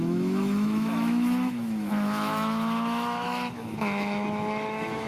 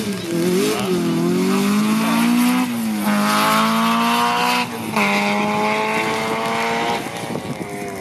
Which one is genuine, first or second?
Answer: second